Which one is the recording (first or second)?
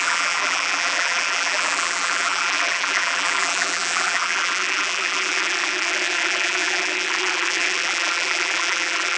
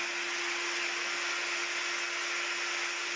second